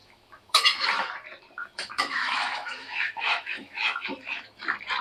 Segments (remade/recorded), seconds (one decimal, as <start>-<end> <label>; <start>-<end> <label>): 0.0-0.9 remade; 0.9-1.6 recorded; 1.6-4.6 remade; 4.6-5.0 recorded